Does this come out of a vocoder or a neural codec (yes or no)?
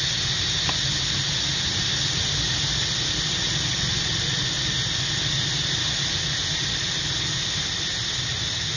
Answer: no